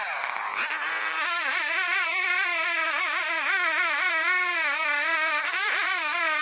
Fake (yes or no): no